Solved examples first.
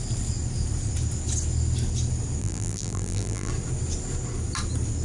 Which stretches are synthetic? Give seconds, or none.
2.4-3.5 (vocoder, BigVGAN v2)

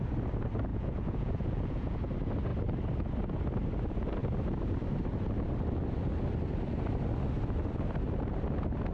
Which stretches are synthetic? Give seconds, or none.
0.7-2.0 (vocoder, Vocos)